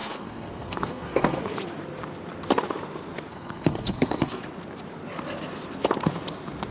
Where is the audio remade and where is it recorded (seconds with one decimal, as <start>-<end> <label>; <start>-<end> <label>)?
0.0-1.4 remade; 1.4-3.3 recorded; 3.3-4.4 remade; 4.4-6.7 recorded